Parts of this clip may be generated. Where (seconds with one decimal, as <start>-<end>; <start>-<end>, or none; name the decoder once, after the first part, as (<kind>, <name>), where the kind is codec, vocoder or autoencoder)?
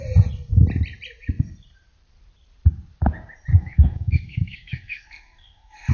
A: 3.5-5.9 (codec, SNAC)